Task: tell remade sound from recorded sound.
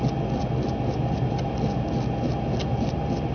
recorded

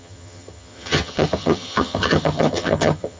remade